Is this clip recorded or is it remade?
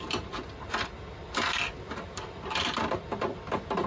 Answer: recorded